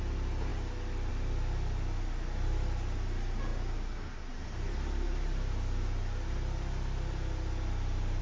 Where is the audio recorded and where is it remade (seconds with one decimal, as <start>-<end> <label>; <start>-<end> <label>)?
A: 0.0-8.2 recorded